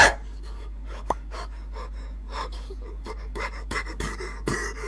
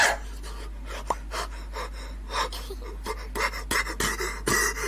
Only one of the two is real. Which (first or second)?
second